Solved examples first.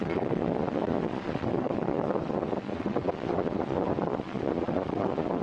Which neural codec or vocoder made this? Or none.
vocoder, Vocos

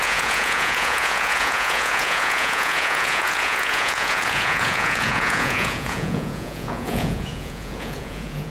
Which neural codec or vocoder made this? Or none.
vocoder, Vocos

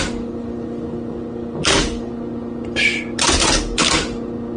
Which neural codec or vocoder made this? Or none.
none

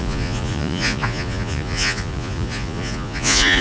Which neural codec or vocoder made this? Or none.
vocoder, Vocos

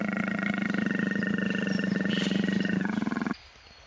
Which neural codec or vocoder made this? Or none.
none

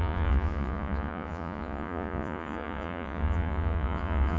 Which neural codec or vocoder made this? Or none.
vocoder, Vocos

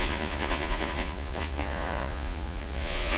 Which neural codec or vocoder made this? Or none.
vocoder, Vocos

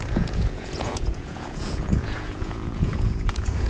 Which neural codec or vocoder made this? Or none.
vocoder, Vocos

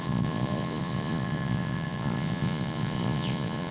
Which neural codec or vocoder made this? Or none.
vocoder, Vocos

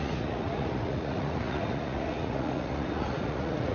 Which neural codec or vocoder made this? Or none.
vocoder, Vocos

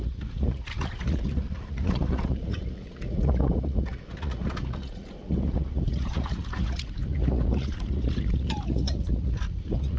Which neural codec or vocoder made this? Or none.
vocoder, Vocos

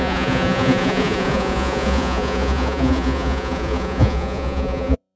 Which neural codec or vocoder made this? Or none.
vocoder, Vocos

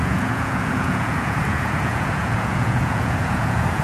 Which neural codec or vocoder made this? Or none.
vocoder, Vocos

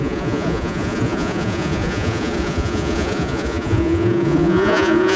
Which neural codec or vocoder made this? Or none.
vocoder, Vocos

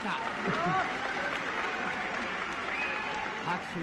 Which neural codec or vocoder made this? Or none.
none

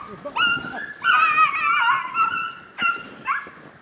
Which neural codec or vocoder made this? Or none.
none